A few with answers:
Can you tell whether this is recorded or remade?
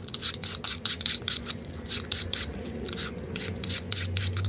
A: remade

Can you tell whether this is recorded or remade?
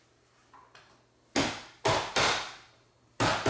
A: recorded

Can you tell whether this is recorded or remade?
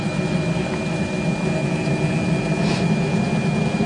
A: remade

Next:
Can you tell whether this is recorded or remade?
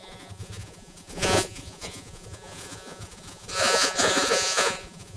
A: remade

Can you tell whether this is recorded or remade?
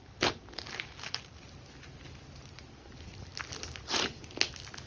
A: recorded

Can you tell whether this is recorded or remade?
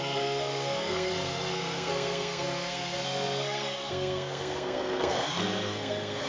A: remade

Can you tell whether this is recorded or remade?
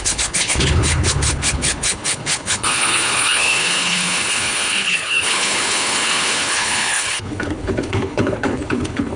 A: remade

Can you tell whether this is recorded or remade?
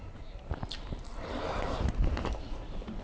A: remade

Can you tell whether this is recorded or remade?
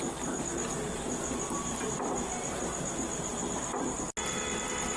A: recorded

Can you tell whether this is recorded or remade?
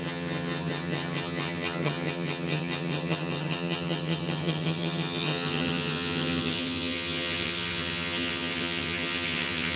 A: remade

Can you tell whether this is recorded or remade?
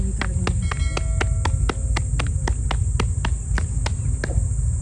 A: recorded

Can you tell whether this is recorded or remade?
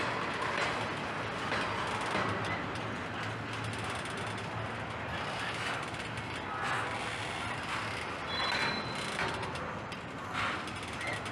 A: recorded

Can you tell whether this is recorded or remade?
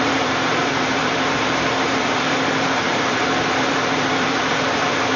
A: remade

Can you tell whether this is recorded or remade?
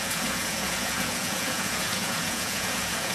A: remade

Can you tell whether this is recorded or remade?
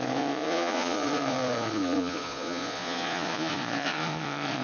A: remade